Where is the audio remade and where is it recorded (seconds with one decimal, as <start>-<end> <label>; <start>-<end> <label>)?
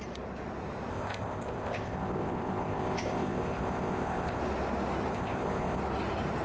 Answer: 0.0-0.9 recorded; 0.9-4.4 remade; 4.4-5.1 recorded; 5.1-5.8 remade; 5.8-6.4 recorded